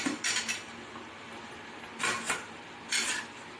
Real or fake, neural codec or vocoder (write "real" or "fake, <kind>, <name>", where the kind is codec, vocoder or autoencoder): real